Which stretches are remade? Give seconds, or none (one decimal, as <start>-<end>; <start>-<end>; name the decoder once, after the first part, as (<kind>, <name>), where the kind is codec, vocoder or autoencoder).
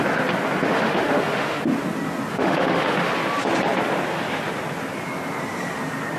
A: 0.7-1.6 (autoencoder, DAC-VAE); 2.3-3.1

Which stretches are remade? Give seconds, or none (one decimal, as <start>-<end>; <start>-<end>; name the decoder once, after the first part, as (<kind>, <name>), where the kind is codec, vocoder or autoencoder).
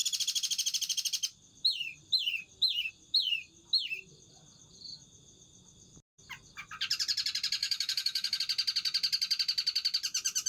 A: 7.6-8.4 (autoencoder, DAC-VAE)